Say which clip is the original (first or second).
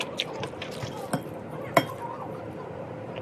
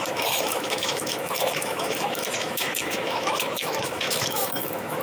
first